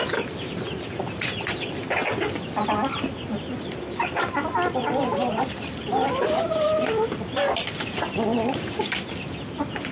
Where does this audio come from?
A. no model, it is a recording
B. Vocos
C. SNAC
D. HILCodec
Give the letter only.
A